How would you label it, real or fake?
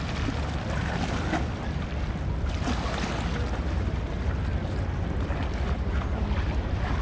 real